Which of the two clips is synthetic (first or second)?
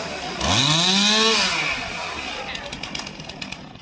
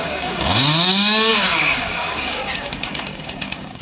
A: second